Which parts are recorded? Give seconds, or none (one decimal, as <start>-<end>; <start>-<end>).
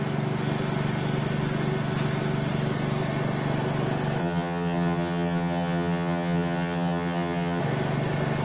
0.0-4.2; 7.6-8.4